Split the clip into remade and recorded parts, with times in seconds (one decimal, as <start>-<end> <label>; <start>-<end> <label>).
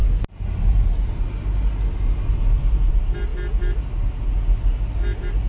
0.0-5.5 recorded